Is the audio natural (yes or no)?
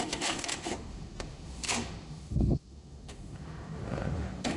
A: no